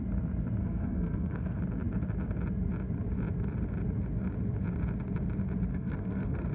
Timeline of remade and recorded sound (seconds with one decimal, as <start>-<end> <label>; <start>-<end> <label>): 0.0-0.6 recorded; 0.6-1.6 remade; 1.6-5.7 recorded; 5.7-6.5 remade